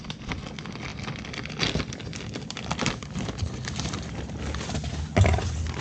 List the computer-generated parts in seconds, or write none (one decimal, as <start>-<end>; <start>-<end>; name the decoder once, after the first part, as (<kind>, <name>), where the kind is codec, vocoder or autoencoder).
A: none